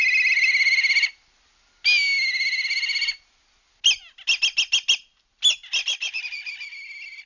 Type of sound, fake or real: real